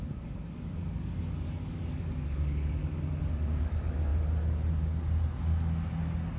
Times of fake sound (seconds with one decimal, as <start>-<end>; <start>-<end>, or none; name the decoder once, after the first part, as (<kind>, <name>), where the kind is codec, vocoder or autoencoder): 0.0-2.8 (codec, DAC); 3.3-4.1